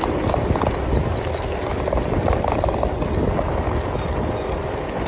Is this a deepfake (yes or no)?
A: no